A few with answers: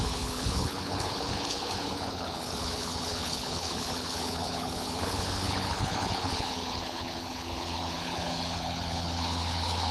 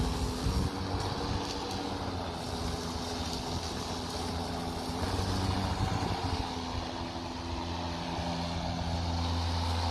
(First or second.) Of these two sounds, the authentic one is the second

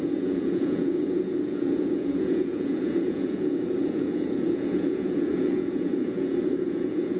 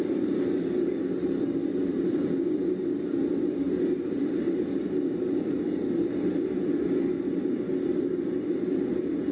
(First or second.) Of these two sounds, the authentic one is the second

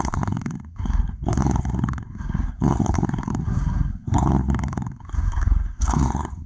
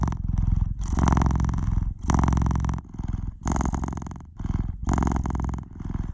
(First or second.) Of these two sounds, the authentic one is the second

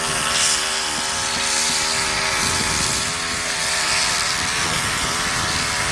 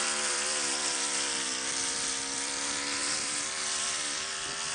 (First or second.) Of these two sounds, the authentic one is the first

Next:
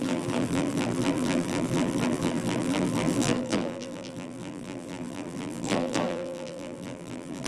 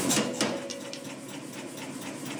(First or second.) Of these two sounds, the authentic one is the second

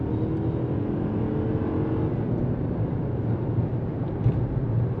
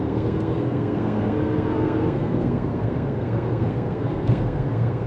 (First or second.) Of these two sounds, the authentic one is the first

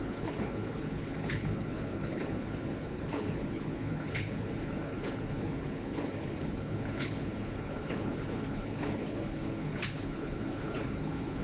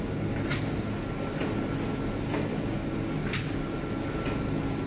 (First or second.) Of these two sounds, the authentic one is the second